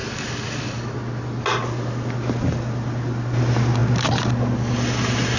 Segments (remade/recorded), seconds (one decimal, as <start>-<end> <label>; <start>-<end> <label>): 0.0-5.4 recorded